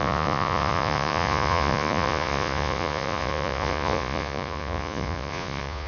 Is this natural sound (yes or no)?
no